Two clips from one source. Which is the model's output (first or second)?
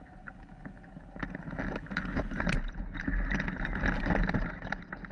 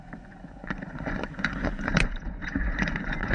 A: second